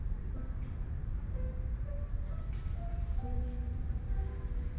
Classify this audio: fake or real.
fake